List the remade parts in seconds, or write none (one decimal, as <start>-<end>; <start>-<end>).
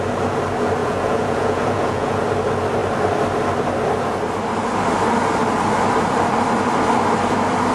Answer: 0.8-2.2